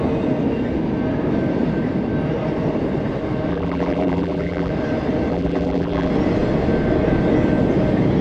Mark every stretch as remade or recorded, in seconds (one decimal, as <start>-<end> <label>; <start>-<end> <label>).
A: 0.0-3.5 recorded; 3.5-4.7 remade; 4.7-5.3 recorded; 5.3-6.1 remade; 6.1-8.2 recorded